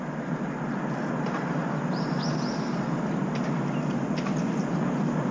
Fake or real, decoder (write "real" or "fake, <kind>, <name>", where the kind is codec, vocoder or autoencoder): real